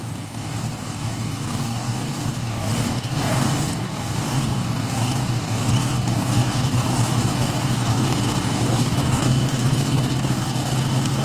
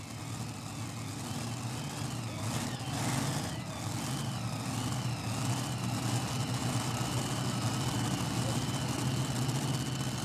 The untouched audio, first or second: second